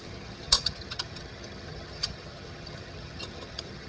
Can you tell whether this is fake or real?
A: fake